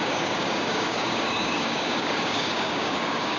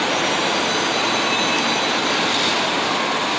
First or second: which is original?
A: second